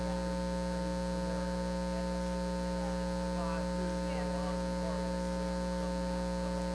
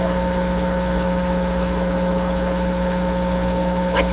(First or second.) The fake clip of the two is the second